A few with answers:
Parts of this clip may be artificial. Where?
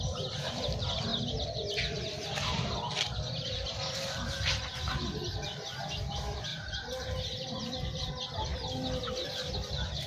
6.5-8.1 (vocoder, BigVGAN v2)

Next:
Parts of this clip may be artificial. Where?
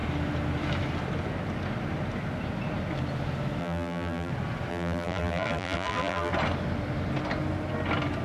3.6-4.3 (vocoder, BigVGAN v2); 4.7-6.3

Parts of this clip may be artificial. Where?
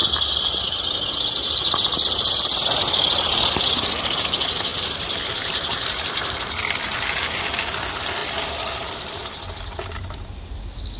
0.0-3.6 (vocoder, BigVGAN v2); 4.7-6.4; 8.2-9.1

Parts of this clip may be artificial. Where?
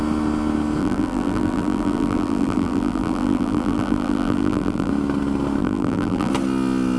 0.8-4.9 (vocoder, BigVGAN v2); 5.6-6.3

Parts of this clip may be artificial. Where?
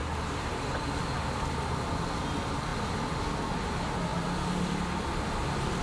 none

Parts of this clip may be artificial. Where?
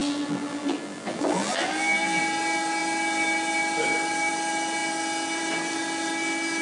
0.0-2.2 (vocoder, BigVGAN v2)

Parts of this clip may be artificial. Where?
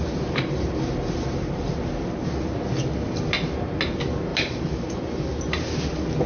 0.0-1.7 (vocoder, BigVGAN v2); 4.3-5.0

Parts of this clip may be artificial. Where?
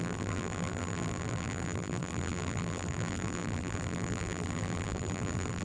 0.0-5.6 (vocoder, BigVGAN v2)